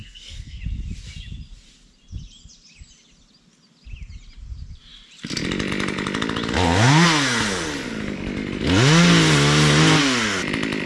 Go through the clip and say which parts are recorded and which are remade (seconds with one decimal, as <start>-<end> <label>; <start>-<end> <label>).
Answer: 0.0-0.6 remade; 0.6-10.9 recorded

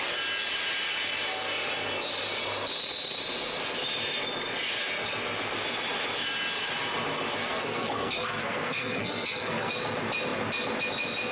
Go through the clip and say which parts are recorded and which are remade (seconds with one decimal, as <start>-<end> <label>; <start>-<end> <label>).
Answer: 0.0-7.4 recorded; 7.4-9.7 remade; 9.7-11.3 recorded

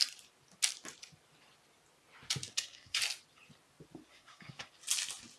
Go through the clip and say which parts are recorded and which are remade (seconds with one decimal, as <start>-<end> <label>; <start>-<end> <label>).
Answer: 0.0-2.5 recorded; 2.5-3.0 remade; 3.0-4.1 recorded; 4.1-4.7 remade; 4.7-5.4 recorded

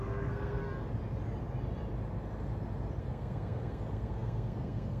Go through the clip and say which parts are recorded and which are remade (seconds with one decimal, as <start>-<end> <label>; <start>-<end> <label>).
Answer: 0.0-0.6 remade; 0.6-3.0 recorded; 3.0-5.0 remade